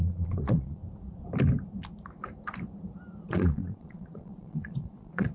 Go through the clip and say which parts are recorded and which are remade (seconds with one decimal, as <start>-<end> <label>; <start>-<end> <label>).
0.0-0.8 remade; 0.8-3.3 recorded; 3.3-5.3 remade